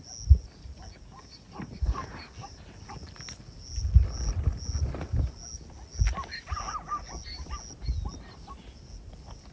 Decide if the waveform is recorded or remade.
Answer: recorded